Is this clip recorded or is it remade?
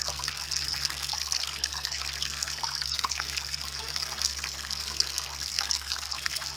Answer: remade